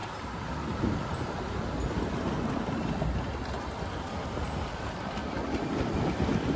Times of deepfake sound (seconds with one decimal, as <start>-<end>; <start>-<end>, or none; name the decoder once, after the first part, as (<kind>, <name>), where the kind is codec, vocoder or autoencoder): 4.0-5.2 (vocoder, BigVGAN v2); 5.7-6.6